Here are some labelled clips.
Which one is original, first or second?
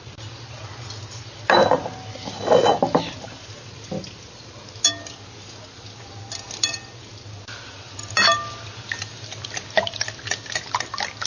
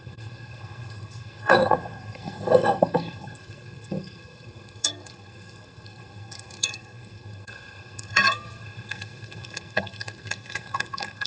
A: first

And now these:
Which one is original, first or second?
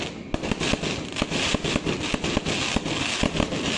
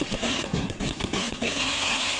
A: first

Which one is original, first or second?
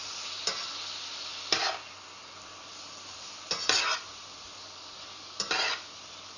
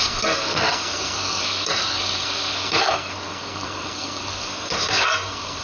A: first